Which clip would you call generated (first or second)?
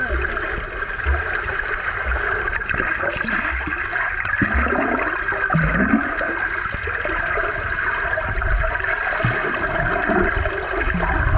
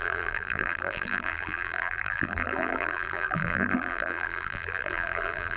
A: second